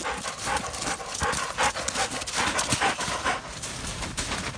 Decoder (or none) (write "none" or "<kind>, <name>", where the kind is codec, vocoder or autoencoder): none